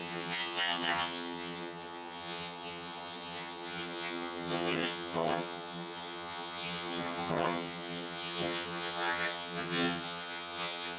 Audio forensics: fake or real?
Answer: fake